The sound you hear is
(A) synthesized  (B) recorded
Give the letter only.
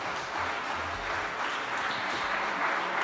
B